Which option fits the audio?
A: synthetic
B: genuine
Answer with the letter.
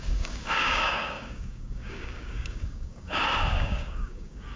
A